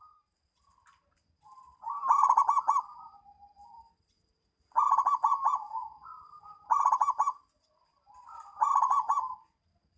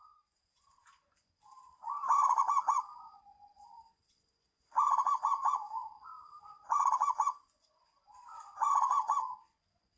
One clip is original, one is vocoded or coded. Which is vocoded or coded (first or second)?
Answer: second